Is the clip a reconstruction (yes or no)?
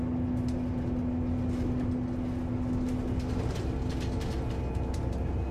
no